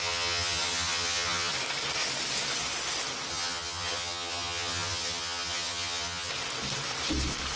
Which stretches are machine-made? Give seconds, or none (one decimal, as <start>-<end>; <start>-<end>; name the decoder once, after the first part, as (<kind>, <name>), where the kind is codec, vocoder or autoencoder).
0.0-1.5 (vocoder, HiFi-GAN); 3.3-6.3